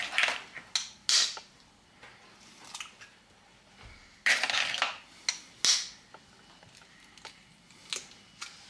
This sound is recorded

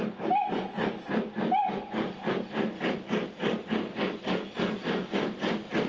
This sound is recorded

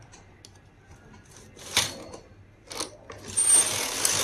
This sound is recorded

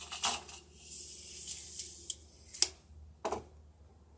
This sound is recorded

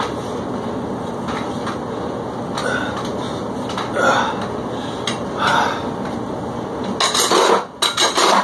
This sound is recorded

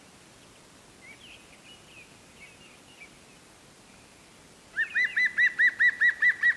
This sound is recorded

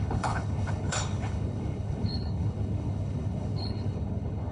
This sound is remade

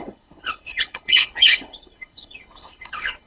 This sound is remade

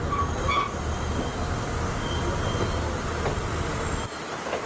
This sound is recorded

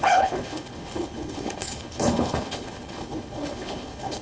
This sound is remade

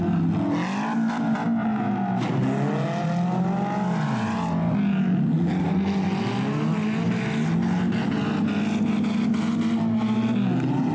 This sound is recorded